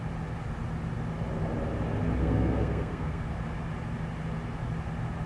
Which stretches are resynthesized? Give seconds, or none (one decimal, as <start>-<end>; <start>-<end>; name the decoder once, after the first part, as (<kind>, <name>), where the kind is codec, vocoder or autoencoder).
2.2-3.3 (codec, SNAC)